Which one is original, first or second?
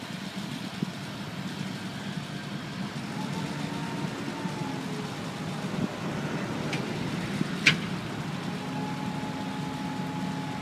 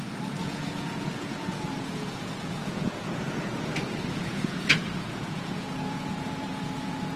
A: first